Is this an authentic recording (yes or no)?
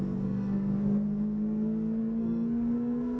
no